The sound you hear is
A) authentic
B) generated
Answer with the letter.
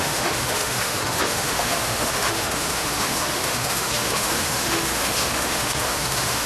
B